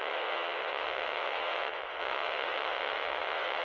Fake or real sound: fake